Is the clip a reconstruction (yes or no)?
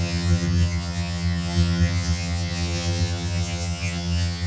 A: yes